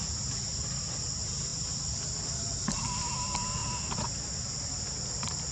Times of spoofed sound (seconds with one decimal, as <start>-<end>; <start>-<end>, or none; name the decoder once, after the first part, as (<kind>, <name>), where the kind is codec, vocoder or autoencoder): none